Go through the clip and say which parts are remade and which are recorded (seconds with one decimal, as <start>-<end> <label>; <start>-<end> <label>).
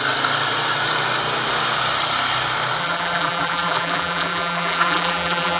0.0-2.8 recorded; 2.8-5.6 remade